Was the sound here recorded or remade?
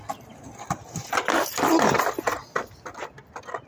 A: recorded